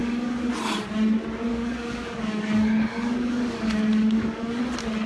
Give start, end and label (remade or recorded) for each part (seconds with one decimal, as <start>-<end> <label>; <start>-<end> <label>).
0.0-0.5 remade; 0.5-1.5 recorded; 1.5-4.6 remade; 4.6-5.1 recorded